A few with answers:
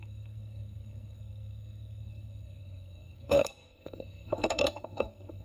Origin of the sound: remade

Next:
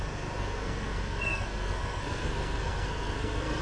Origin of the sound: remade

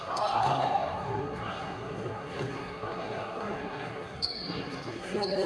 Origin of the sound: remade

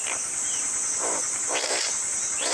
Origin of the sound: recorded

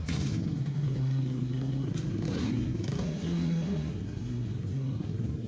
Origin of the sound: remade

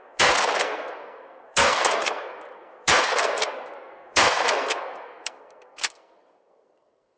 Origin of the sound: remade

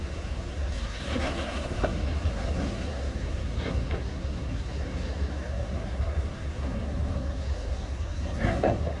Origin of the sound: remade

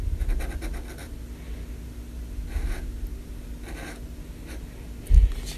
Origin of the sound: recorded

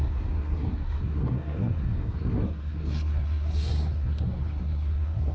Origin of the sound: remade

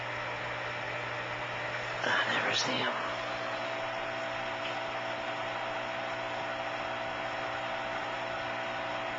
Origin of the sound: recorded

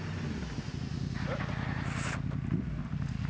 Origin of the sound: recorded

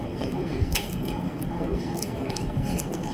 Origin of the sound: remade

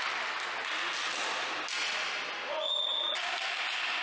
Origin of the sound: recorded